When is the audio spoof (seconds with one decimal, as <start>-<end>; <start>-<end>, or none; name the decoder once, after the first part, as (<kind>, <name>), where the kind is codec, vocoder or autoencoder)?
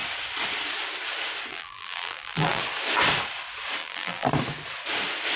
1.5-2.6 (vocoder, BigVGAN v2); 3.8-4.3